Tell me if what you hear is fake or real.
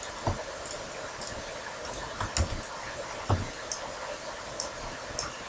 real